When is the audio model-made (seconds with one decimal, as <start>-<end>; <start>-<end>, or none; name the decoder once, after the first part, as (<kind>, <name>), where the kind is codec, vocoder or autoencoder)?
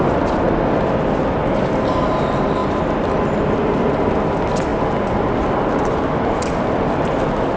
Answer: none